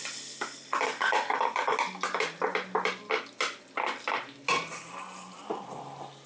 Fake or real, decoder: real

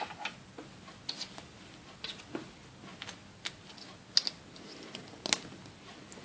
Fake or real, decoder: real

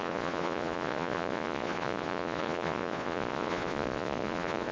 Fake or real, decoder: fake, vocoder, Vocos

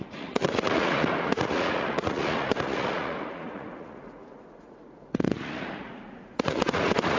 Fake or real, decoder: fake, vocoder, Vocos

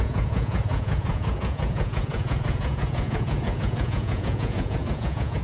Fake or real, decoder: fake, vocoder, Vocos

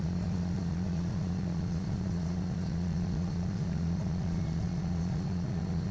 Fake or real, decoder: fake, vocoder, Vocos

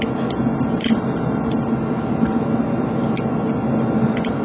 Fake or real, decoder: real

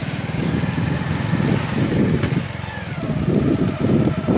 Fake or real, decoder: real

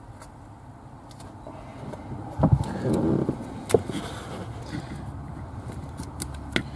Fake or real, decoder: real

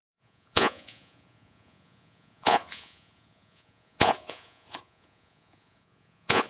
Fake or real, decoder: fake, vocoder, Vocos